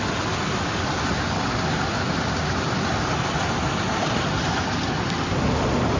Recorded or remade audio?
recorded